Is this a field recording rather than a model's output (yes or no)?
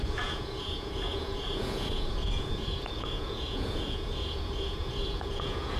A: no